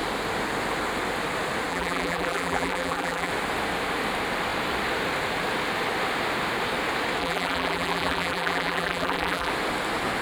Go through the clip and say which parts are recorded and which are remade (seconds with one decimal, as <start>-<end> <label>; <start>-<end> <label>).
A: 0.0-1.7 recorded; 1.7-3.3 remade; 3.3-7.2 recorded; 7.2-9.5 remade; 9.5-10.2 recorded